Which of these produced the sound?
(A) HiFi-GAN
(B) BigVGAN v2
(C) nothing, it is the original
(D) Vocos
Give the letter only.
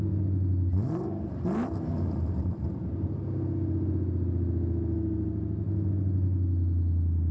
C